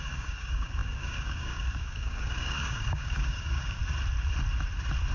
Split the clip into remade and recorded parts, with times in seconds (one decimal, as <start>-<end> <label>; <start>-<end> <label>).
0.0-3.8 remade; 3.8-5.1 recorded